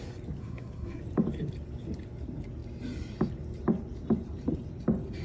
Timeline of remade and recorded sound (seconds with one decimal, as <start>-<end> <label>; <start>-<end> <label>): 0.0-0.4 recorded; 0.4-1.0 remade; 1.0-5.2 recorded